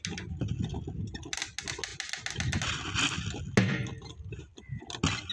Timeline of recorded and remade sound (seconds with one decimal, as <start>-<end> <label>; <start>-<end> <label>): 0.0-5.3 recorded